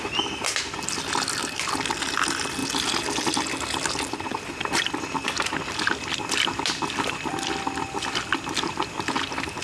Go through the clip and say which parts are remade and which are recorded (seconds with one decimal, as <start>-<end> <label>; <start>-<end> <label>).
0.0-9.6 recorded